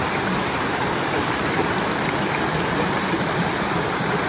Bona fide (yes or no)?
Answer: yes